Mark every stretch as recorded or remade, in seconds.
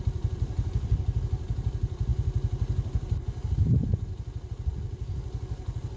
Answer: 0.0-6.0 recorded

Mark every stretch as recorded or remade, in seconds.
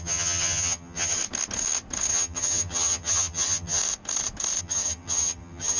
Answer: 0.0-1.2 remade; 1.2-2.1 recorded; 2.1-3.8 remade; 3.8-4.6 recorded; 4.6-5.8 remade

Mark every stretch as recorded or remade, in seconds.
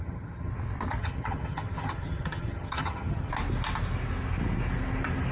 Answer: 0.0-0.5 remade; 0.5-1.0 recorded; 1.0-3.3 remade; 3.3-5.3 recorded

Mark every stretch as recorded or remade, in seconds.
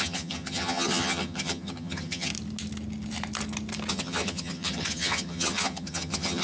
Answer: 0.0-2.3 remade; 2.3-3.9 recorded; 3.9-6.4 remade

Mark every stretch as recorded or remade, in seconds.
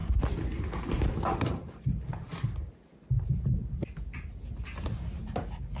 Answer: 0.0-5.8 recorded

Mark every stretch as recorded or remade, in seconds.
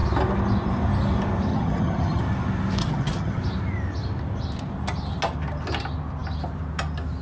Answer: 0.0-1.5 recorded; 1.5-2.2 remade; 2.2-2.8 recorded; 2.8-3.4 remade; 3.4-7.2 recorded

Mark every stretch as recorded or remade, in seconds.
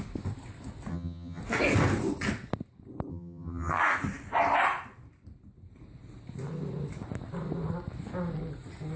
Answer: 0.0-0.9 recorded; 0.9-1.4 remade; 1.4-3.1 recorded; 3.1-3.8 remade; 3.8-9.0 recorded